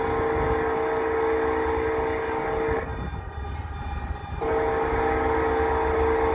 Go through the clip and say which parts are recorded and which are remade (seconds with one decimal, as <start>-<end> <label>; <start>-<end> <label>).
0.0-6.3 recorded